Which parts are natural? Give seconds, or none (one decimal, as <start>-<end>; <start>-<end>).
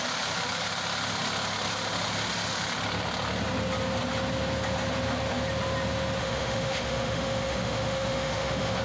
0.0-6.2